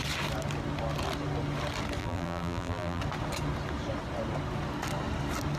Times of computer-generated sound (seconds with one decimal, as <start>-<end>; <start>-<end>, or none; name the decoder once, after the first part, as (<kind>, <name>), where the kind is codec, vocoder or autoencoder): 2.0-3.0 (vocoder, BigVGAN v2)